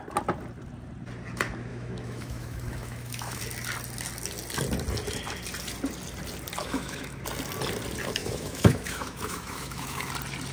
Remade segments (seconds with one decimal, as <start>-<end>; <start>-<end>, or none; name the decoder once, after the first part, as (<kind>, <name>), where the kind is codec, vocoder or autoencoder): 1.7-3.4 (autoencoder, DAC-VAE); 6.6-7.2; 8.2-10.1